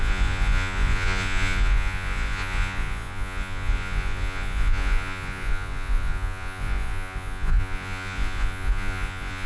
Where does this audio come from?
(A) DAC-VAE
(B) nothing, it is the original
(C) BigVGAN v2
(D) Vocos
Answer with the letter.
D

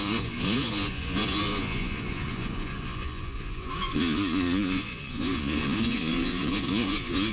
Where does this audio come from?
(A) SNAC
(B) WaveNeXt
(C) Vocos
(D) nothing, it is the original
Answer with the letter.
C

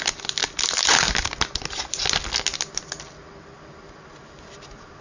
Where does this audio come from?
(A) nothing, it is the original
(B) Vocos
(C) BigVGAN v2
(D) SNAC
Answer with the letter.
A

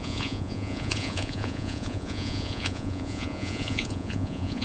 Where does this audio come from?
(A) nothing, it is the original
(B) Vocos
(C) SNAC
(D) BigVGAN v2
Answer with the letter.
B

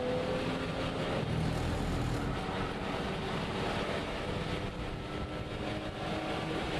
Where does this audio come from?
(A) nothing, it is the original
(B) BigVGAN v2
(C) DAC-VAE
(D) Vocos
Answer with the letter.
A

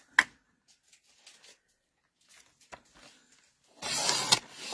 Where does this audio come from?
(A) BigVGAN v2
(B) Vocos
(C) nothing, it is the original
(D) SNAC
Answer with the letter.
C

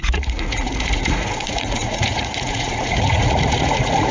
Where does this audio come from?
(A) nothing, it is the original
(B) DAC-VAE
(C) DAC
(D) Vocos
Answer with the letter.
D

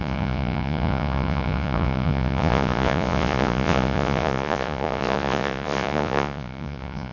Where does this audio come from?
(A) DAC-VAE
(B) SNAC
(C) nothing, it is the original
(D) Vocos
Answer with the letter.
D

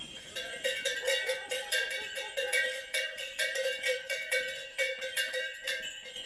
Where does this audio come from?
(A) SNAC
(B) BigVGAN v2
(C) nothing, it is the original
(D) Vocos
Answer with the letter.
D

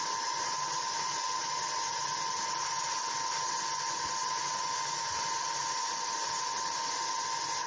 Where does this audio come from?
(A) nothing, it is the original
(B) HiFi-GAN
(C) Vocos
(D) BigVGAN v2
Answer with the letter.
A